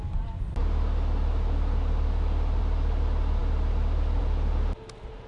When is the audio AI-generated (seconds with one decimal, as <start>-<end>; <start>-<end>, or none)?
none